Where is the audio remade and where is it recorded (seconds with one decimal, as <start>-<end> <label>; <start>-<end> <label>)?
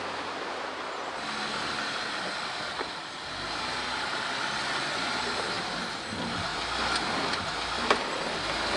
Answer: 0.0-4.6 recorded; 4.6-5.2 remade; 5.2-8.8 recorded